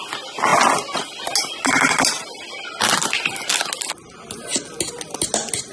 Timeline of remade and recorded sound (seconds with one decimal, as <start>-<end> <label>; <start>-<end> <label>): 0.0-5.7 recorded